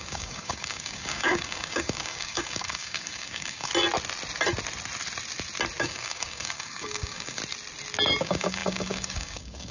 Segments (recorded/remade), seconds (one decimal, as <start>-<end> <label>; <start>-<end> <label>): 0.0-3.7 remade; 3.7-5.8 recorded; 5.8-7.4 remade; 7.4-8.2 recorded; 8.2-9.7 remade